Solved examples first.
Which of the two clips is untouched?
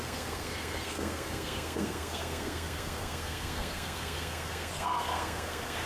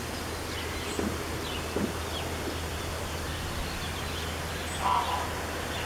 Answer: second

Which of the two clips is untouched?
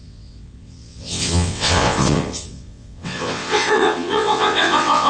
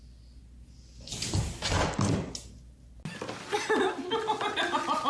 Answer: second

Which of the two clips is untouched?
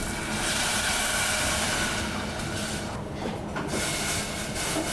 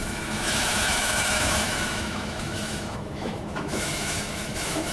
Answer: first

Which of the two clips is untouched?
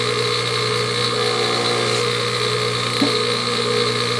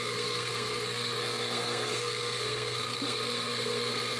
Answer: first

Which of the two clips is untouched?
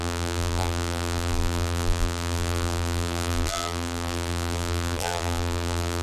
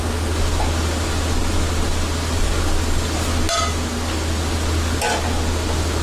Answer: second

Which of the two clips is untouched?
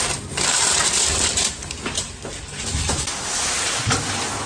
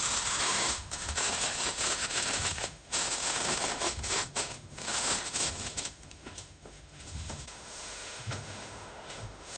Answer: first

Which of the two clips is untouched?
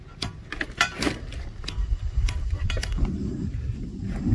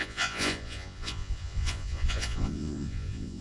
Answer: first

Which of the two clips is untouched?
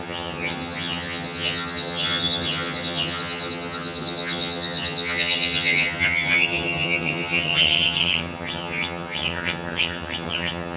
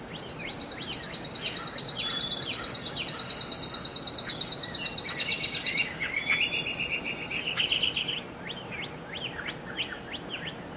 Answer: second